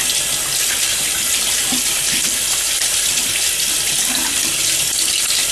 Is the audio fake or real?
real